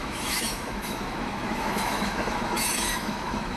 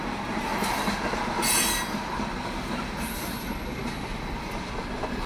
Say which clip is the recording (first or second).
second